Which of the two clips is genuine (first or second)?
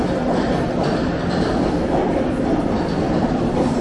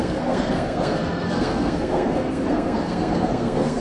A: first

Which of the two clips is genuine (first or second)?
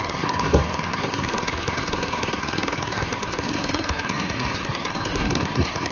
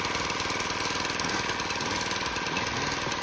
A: second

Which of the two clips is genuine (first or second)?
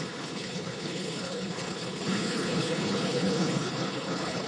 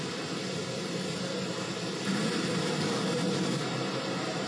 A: second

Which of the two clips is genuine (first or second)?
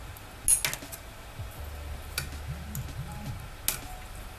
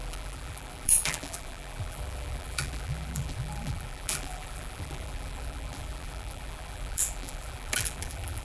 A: first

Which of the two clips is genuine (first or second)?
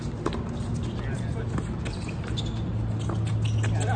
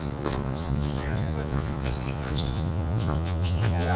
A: first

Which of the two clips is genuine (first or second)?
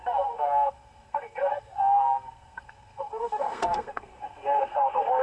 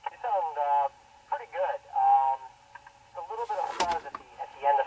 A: second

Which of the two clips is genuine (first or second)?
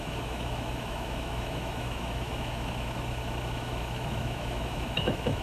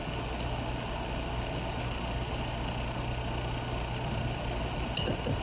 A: second